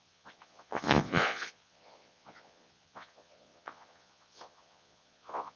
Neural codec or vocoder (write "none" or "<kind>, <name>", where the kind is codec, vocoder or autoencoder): vocoder, Vocos